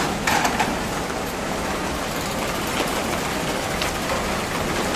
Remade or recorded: recorded